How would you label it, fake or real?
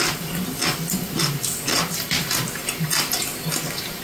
real